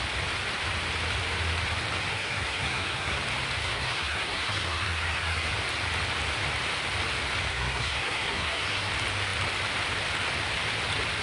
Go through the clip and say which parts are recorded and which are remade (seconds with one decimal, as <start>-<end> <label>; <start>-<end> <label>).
0.0-2.1 recorded; 2.1-3.2 remade; 3.2-3.6 recorded; 3.6-5.5 remade; 5.5-7.5 recorded; 7.5-8.9 remade; 8.9-11.2 recorded